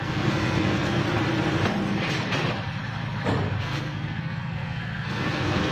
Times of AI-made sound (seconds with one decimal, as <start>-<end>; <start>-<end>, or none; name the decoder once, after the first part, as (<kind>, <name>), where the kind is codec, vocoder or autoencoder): 0.0-1.0 (codec, SNAC); 3.6-5.7